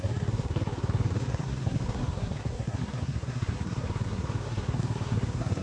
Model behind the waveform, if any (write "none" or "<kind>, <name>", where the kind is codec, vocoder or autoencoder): codec, SNAC